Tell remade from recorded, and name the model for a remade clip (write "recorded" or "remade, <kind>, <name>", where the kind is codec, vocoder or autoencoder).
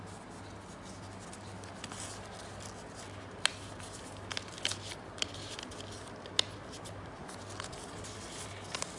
recorded